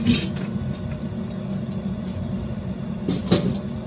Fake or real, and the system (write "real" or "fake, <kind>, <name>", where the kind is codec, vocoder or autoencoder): real